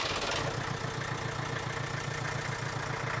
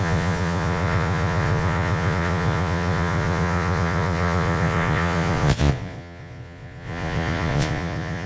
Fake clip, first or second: second